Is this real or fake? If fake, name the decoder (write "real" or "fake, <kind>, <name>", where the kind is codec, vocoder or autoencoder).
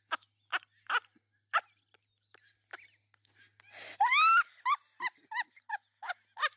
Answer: real